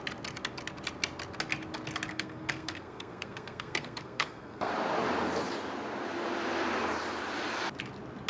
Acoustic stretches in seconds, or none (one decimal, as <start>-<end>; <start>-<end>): 0.0-2.1; 4.7-8.3

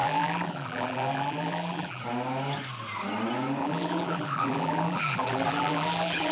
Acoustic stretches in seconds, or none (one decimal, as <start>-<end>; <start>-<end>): 2.0-3.6

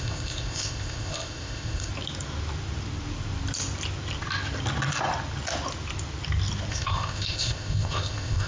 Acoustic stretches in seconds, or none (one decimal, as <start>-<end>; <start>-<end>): 1.9-6.7

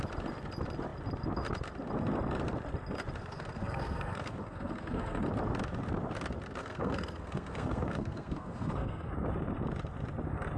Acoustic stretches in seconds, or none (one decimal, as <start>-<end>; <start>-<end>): 0.0-3.2; 5.2-6.6; 9.1-10.6